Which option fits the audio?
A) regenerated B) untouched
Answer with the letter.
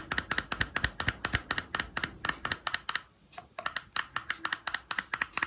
B